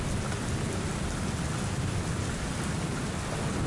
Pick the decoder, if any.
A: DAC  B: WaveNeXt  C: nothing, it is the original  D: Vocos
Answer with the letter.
C